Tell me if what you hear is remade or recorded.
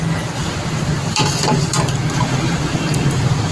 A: recorded